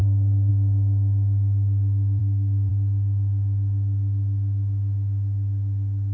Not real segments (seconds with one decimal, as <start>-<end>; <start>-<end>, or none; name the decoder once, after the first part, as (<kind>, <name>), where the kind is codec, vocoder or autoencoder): 0.0-0.5 (codec, SNAC); 2.2-2.7